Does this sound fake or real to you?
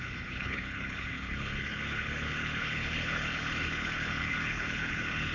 fake